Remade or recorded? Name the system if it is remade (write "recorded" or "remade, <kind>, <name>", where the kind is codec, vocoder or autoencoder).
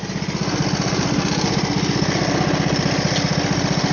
recorded